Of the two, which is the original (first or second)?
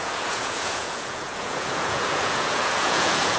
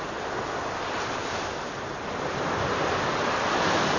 second